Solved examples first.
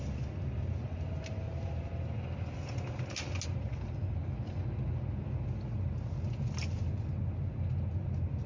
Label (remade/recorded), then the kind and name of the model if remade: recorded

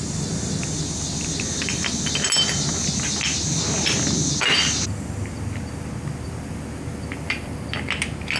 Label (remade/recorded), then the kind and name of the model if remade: recorded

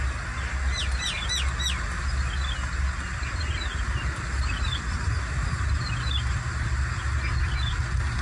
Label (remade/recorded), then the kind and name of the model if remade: recorded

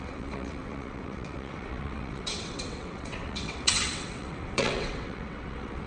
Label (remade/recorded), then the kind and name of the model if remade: remade, vocoder, WaveNeXt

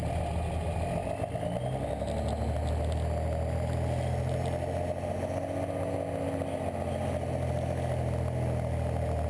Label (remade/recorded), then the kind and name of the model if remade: recorded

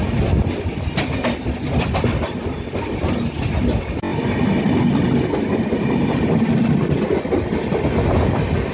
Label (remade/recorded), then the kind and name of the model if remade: recorded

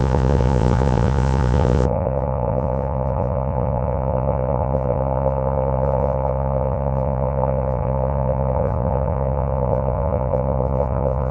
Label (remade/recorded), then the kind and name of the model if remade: remade, vocoder, Vocos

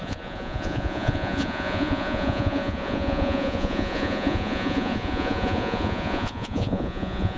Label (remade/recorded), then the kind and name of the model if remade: remade, vocoder, Vocos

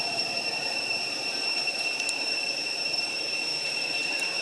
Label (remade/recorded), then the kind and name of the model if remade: remade, vocoder, BigVGAN v2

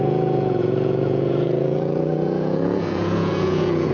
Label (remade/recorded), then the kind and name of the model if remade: remade, vocoder, Vocos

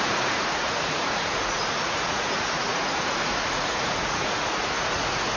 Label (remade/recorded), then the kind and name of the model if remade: remade, vocoder, Vocos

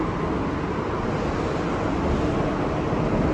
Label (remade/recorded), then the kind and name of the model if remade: recorded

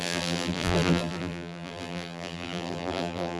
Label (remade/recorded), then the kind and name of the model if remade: remade, vocoder, BigVGAN v2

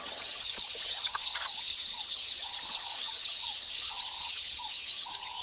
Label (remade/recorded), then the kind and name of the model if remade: remade, vocoder, HiFi-GAN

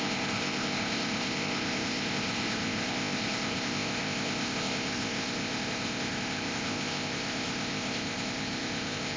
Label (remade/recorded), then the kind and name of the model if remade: remade, codec, ZipCodec